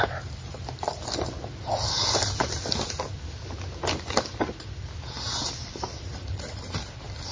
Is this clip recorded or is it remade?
recorded